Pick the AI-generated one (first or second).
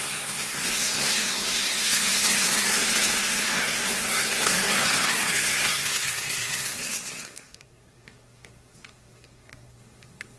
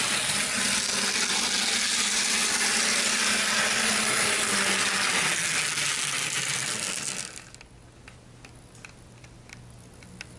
first